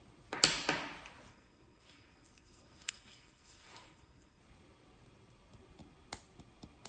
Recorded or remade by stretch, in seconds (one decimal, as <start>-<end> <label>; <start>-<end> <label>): 0.0-1.3 recorded; 1.3-4.4 remade; 4.4-6.9 recorded